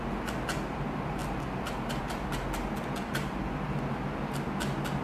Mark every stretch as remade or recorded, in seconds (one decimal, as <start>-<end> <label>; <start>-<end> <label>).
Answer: 0.0-5.0 recorded